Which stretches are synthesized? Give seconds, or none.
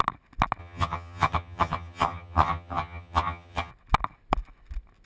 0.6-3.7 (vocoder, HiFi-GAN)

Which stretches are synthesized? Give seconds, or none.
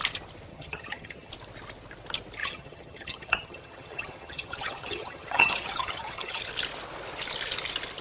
0.5-1.3 (vocoder, HiFi-GAN); 2.4-6.4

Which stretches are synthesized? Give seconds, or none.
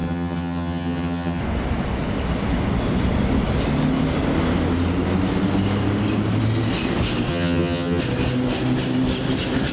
0.0-1.4 (vocoder, HiFi-GAN); 7.3-8.0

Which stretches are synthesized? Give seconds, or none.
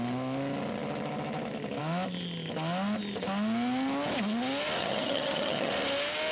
4.8-5.7 (vocoder, HiFi-GAN)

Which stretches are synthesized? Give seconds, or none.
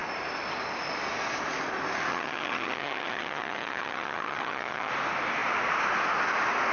2.1-4.9 (vocoder, HiFi-GAN)